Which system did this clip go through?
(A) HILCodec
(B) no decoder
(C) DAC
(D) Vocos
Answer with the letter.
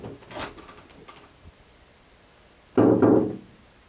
B